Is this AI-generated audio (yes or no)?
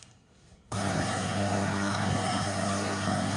yes